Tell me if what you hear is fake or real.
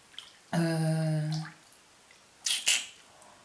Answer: real